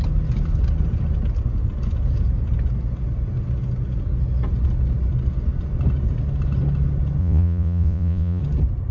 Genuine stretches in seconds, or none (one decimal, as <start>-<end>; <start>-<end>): 0.0-7.2; 8.4-8.9